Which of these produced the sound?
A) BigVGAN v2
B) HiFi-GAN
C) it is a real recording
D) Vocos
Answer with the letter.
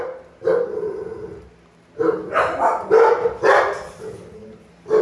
C